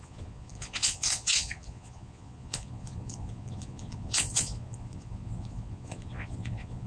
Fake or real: fake